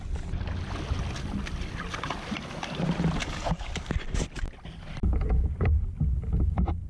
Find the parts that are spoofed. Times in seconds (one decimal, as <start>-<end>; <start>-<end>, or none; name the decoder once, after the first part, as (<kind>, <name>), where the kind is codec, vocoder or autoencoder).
3.2-3.7 (codec, DAC)